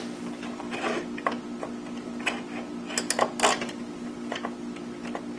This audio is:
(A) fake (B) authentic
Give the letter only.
B